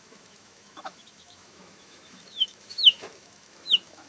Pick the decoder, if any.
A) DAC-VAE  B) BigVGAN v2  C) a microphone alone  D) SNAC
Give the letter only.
A